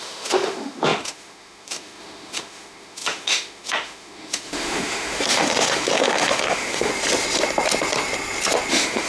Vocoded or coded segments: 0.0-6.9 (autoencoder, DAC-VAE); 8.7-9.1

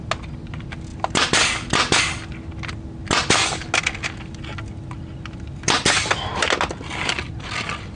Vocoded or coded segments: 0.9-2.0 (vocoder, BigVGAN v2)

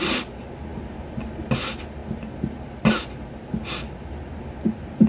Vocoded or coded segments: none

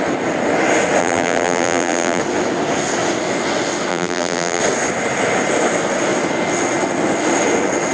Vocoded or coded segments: 1.0-2.2 (vocoder, BigVGAN v2); 3.9-4.6